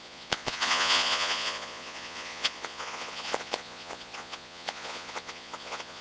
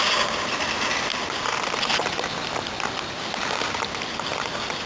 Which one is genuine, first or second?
second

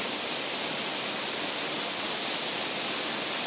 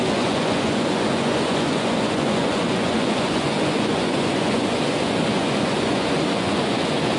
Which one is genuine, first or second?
first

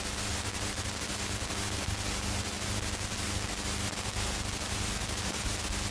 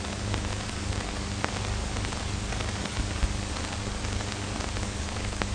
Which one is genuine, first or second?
first